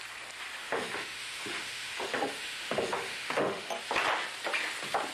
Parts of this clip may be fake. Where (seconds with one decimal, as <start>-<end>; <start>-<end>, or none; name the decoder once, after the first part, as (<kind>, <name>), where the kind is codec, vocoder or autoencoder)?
0.6-3.7 (autoencoder, DAC-VAE)